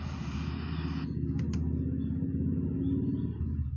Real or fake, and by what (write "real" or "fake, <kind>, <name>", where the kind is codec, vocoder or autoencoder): real